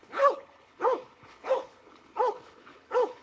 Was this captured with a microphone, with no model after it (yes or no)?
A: no